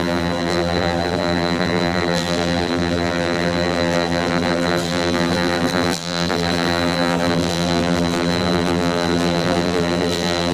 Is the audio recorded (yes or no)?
no